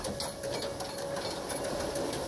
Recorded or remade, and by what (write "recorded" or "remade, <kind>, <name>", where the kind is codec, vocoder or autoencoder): recorded